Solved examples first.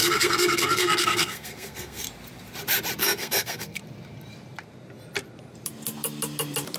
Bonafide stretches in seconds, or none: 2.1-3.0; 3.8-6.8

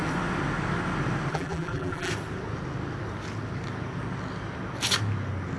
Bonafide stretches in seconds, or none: 0.0-1.3; 2.1-5.6

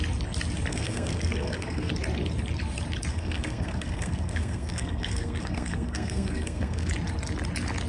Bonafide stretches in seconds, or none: 0.0-0.7; 1.9-3.1; 6.9-7.9